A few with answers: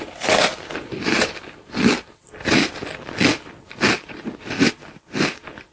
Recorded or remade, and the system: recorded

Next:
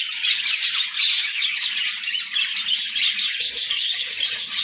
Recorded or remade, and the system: recorded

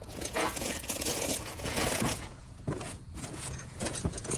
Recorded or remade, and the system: remade, vocoder, Vocos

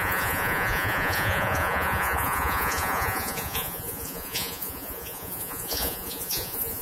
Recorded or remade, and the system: remade, vocoder, Vocos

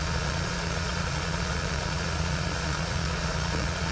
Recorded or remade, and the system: remade, vocoder, Vocos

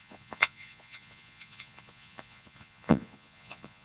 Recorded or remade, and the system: remade, vocoder, Vocos